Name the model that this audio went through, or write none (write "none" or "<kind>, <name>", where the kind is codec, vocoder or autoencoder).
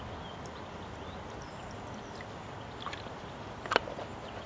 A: none